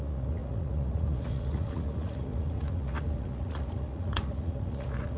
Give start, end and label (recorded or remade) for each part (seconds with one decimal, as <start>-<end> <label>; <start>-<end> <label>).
0.0-5.2 remade